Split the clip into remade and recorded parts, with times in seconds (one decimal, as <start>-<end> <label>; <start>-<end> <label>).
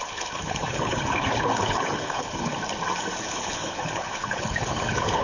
0.0-2.5 remade; 2.5-3.2 recorded; 3.2-5.2 remade